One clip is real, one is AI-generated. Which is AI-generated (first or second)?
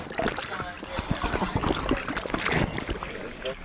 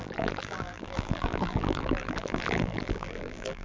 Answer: second